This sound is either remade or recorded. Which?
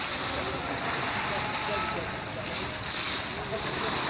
recorded